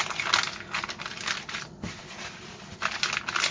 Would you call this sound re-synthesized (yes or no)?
no